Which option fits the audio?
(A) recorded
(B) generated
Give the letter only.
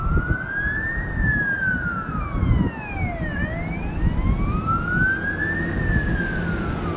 A